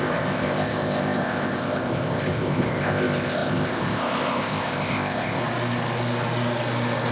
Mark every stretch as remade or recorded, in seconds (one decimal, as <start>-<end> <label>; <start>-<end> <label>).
0.0-5.4 remade; 5.4-7.1 recorded